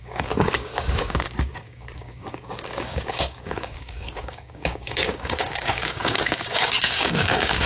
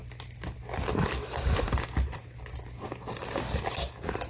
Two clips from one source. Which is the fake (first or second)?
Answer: first